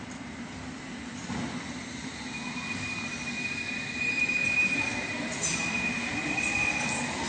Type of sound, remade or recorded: recorded